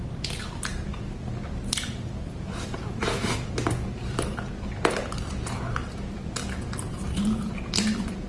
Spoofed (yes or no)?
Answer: yes